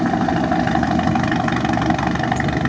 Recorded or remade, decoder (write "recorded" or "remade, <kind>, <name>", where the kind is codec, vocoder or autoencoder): recorded